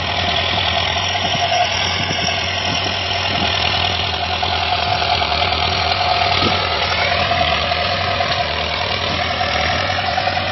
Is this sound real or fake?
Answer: fake